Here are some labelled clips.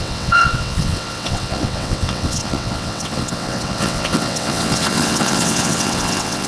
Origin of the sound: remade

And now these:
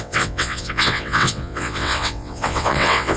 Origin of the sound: remade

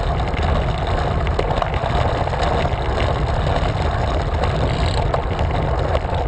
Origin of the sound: recorded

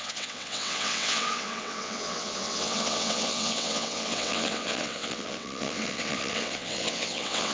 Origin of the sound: remade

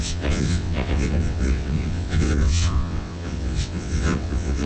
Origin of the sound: remade